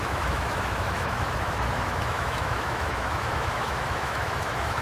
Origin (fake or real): fake